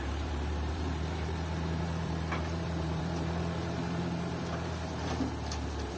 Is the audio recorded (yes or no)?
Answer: no